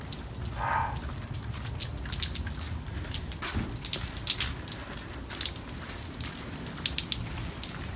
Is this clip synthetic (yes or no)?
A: no